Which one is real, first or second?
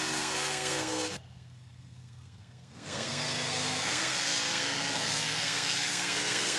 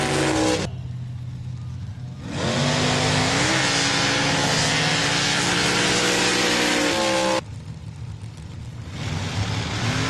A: second